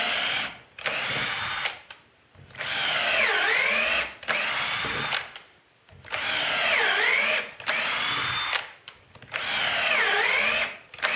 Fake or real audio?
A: fake